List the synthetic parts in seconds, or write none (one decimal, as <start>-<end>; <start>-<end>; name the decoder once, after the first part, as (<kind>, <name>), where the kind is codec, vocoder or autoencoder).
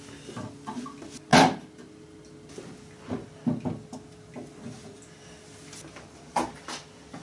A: none